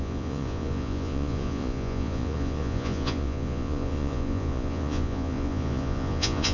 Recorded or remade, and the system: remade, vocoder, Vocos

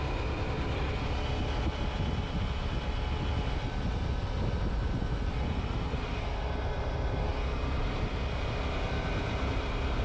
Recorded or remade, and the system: recorded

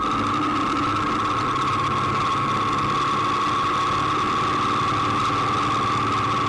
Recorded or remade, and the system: recorded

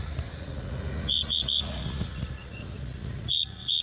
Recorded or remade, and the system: remade, vocoder, Vocos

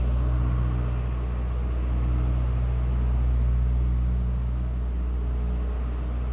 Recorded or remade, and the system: recorded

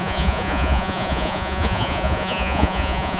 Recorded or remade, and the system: remade, vocoder, Vocos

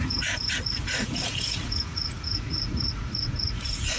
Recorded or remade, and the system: remade, vocoder, Vocos